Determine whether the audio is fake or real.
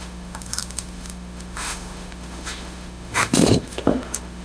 fake